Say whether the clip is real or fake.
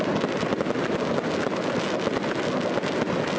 real